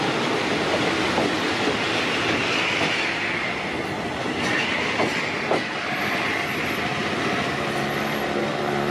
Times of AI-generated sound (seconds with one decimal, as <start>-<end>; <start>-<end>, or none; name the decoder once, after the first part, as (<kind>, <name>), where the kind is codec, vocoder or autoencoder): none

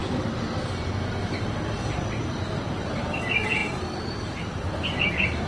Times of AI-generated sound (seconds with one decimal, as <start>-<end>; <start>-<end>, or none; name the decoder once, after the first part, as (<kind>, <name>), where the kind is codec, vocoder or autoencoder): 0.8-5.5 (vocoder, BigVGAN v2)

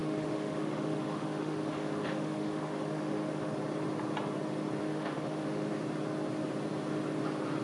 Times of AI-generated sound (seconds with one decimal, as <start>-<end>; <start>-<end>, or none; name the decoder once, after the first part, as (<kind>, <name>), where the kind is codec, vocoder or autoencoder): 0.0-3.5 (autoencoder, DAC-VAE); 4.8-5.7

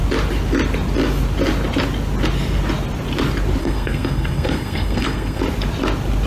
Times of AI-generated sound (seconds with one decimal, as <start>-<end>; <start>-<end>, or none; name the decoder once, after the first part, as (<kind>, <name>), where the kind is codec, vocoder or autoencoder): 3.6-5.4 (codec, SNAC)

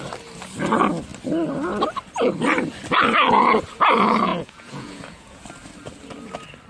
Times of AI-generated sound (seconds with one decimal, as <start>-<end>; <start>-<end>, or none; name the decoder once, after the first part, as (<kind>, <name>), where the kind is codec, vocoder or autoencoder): 4.3-5.4 (vocoder, Vocos)

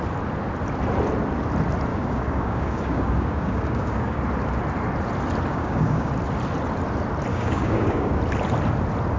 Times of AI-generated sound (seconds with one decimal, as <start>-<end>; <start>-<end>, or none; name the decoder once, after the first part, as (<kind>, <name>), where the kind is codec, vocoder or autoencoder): 1.9-4.2 (codec, DAC); 5.5-6.1; 7.3-8.2